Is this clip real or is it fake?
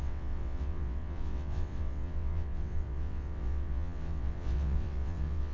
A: fake